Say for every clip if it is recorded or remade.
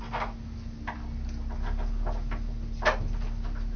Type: recorded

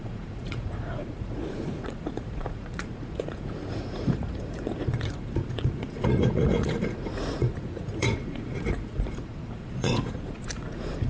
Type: remade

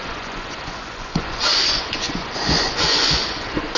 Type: remade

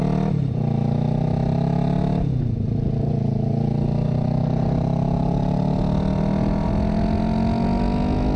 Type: recorded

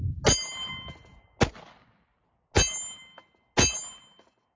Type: recorded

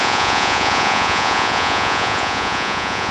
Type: remade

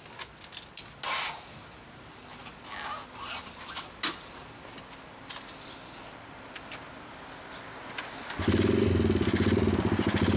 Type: recorded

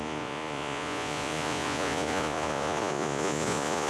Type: remade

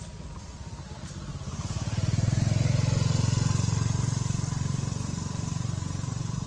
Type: recorded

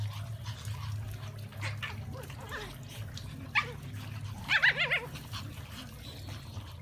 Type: recorded